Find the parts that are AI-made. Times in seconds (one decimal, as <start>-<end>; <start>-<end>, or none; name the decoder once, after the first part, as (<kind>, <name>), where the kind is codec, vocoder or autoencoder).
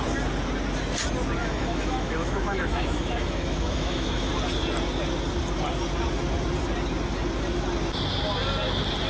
1.4-4.3 (autoencoder, DAC-VAE)